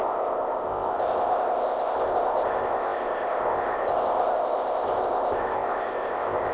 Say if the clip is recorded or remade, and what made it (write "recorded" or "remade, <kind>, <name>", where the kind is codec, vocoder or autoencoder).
remade, codec, ZipCodec